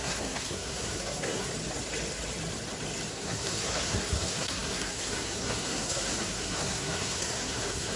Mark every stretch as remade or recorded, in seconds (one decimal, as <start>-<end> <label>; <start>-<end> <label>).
0.0-1.5 remade; 1.5-3.1 recorded; 3.1-8.0 remade